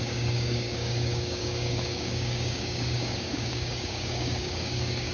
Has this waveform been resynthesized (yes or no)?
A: yes